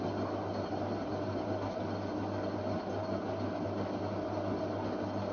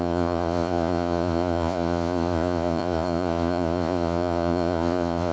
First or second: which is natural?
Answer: first